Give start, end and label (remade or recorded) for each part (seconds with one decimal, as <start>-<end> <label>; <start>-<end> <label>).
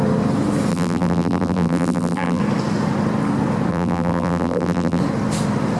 0.0-0.7 recorded; 0.7-2.4 remade; 2.4-3.7 recorded; 3.7-5.0 remade; 5.0-5.8 recorded